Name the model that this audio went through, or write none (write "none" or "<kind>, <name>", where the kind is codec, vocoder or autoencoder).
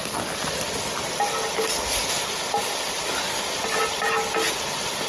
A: none